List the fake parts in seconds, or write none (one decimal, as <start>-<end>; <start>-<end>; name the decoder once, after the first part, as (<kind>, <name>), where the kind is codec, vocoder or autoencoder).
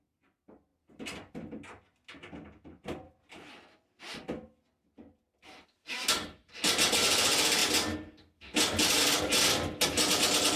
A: none